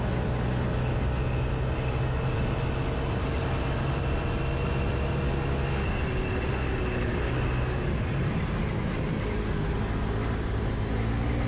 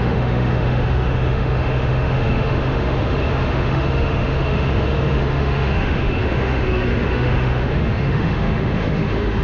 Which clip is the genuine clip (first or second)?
first